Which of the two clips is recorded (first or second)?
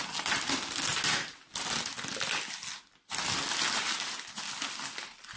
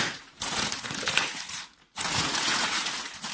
first